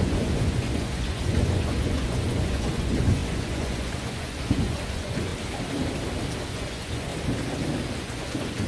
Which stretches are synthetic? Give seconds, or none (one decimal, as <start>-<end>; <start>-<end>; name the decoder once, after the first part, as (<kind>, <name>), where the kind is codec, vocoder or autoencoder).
0.0-5.3 (vocoder, Vocos); 6.5-7.1; 8.0-8.7

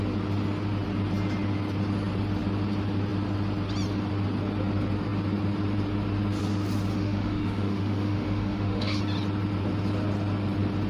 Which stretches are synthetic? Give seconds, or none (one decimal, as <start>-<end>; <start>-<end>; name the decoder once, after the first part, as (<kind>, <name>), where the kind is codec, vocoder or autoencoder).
6.9-9.0 (autoencoder, DAC-VAE)

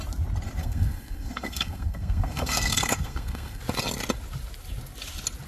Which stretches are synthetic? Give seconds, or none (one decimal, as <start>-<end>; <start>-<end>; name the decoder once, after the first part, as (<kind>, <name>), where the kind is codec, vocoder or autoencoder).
0.6-3.6 (codec, SNAC)

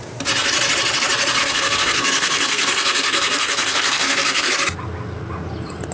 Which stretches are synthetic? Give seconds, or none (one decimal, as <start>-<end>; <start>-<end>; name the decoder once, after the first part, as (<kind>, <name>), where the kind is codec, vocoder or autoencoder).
1.4-4.5 (codec, SNAC)